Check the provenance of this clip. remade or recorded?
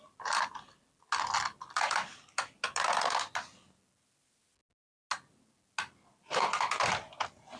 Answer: recorded